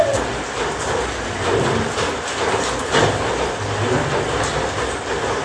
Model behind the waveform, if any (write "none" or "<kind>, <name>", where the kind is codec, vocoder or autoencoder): none